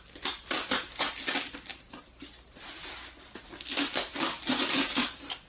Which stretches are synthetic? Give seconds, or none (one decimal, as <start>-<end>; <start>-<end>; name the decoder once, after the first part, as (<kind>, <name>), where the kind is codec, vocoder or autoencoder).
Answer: none